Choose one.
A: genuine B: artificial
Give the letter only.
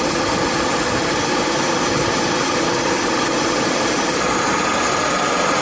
A